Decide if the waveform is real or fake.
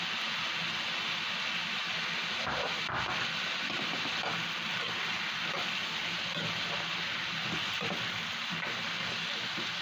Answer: real